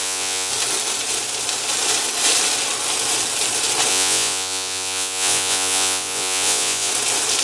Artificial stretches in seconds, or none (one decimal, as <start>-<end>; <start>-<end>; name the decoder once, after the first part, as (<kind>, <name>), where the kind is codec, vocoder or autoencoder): 0.0-0.5 (vocoder, Vocos); 3.9-6.9